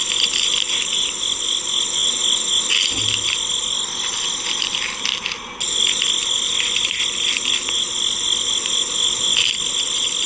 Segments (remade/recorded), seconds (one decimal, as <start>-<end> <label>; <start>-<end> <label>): 0.0-10.3 recorded